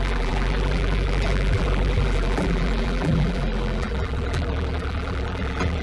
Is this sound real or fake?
fake